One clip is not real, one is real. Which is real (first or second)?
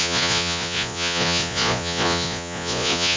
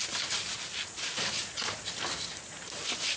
second